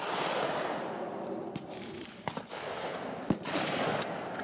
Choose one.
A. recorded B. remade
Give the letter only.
A